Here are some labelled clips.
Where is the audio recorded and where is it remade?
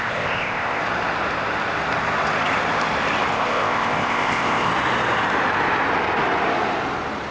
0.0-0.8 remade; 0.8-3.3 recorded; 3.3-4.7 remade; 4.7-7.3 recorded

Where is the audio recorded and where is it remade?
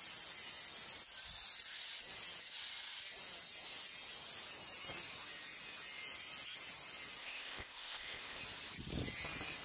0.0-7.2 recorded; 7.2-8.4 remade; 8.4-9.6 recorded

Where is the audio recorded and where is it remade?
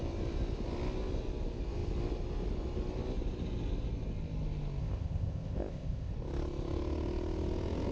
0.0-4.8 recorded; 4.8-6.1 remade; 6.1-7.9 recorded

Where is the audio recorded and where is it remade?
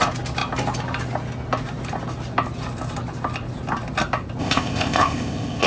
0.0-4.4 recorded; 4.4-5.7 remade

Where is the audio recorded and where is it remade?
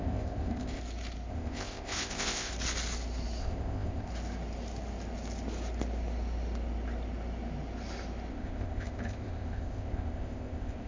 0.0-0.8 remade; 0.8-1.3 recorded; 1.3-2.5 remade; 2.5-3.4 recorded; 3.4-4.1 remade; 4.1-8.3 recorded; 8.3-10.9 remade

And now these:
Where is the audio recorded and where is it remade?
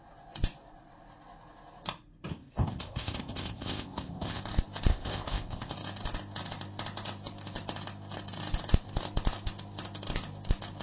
0.0-2.3 recorded; 2.3-4.4 remade; 4.4-4.9 recorded; 4.9-5.7 remade; 5.7-10.8 recorded